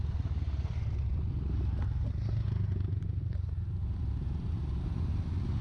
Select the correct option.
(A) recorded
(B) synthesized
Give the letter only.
A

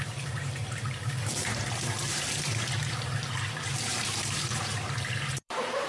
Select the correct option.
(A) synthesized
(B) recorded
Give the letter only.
A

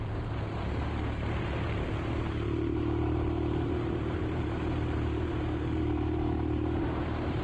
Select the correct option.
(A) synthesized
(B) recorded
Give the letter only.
A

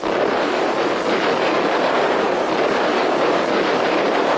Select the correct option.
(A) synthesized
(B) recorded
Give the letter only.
A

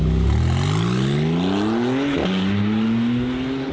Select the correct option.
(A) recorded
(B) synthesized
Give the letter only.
A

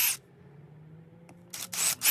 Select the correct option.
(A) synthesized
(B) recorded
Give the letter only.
B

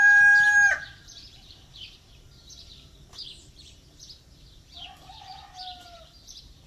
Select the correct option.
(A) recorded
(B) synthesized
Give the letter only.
B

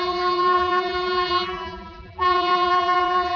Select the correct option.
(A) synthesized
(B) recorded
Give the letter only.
A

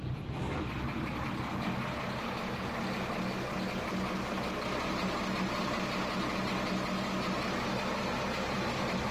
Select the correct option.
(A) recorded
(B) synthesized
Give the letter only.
A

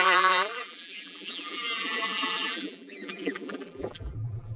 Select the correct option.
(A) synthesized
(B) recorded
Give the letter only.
A